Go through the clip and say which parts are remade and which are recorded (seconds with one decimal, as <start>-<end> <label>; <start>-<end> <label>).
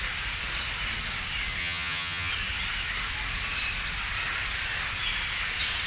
0.0-1.6 recorded; 1.6-2.3 remade; 2.3-5.9 recorded